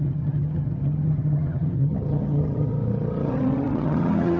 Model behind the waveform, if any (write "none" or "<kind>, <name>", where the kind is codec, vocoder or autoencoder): vocoder, HiFi-GAN